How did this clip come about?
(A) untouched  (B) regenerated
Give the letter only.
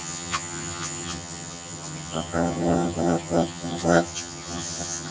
B